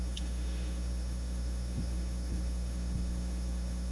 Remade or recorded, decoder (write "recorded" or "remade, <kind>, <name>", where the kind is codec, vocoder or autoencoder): remade, autoencoder, DAC-VAE